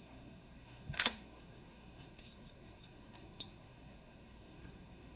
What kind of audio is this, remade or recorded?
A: remade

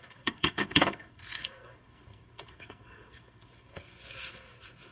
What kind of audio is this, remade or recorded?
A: remade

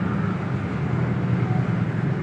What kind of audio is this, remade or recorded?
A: recorded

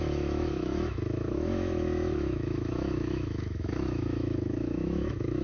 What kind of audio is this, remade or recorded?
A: remade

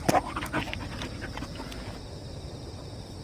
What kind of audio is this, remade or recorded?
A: recorded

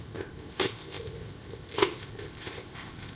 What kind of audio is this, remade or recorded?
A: remade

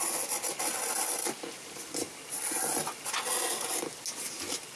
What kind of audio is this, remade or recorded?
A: recorded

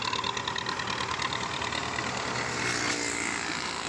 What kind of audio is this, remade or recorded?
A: recorded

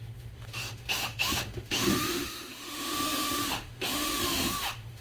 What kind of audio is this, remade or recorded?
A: remade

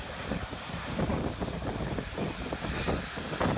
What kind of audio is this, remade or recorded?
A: recorded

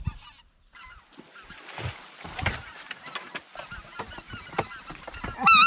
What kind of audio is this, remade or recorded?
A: recorded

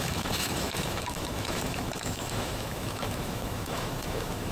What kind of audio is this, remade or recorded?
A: remade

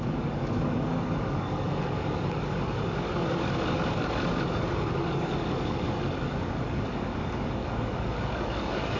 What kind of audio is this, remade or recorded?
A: remade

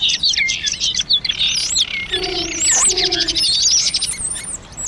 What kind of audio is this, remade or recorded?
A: recorded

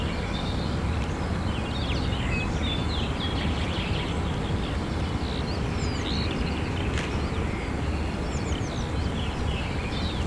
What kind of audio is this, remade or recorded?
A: recorded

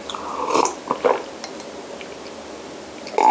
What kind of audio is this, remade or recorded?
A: recorded